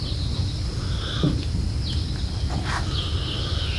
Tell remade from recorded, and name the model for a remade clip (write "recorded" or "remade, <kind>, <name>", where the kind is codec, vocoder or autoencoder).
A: recorded